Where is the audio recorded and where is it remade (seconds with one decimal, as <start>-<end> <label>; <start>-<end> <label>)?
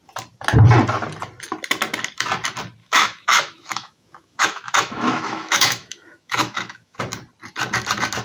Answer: 0.0-2.8 recorded; 2.8-7.0 remade; 7.0-8.2 recorded